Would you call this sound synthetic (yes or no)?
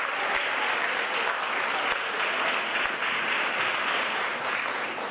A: no